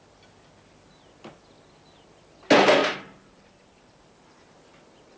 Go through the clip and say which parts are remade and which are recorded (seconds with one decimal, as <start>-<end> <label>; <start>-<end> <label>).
0.0-2.8 recorded; 2.8-4.2 remade; 4.2-5.2 recorded